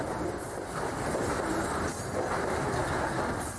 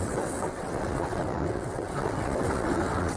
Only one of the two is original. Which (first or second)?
first